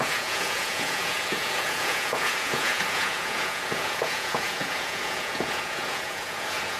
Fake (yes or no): yes